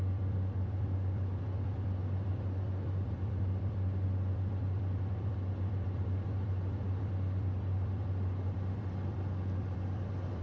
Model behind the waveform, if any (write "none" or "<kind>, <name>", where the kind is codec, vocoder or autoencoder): vocoder, BigVGAN v2